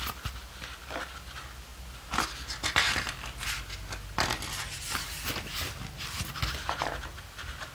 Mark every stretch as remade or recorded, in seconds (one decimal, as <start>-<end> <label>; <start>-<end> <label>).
0.0-7.7 recorded